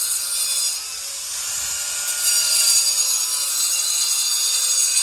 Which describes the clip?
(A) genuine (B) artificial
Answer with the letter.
A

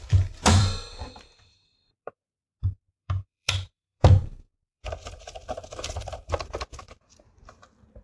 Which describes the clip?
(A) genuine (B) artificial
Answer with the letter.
B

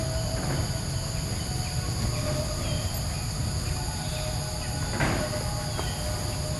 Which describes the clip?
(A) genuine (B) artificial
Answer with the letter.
A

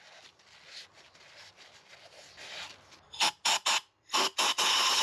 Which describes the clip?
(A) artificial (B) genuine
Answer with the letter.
B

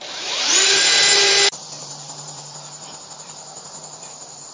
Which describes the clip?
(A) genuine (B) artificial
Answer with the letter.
B